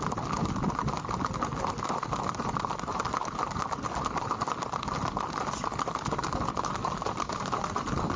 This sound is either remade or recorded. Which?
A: recorded